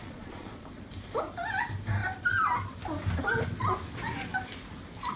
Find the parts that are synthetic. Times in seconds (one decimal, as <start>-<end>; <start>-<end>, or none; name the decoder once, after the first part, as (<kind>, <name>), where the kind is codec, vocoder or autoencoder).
0.0-0.7 (vocoder, Vocos)